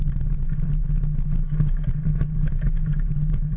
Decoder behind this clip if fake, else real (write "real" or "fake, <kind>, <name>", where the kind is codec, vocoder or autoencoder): real